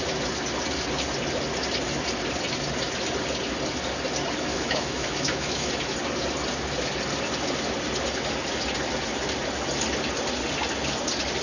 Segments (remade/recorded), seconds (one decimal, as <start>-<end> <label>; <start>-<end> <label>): 0.0-4.5 recorded; 4.5-5.7 remade; 5.7-11.4 recorded